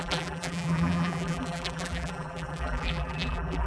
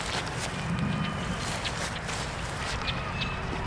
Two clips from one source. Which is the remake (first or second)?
first